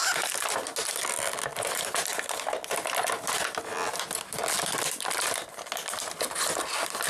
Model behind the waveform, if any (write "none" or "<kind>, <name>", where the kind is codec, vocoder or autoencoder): none